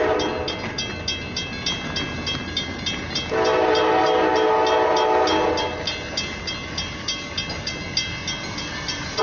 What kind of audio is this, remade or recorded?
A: recorded